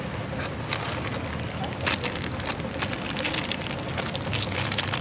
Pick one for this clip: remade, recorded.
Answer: recorded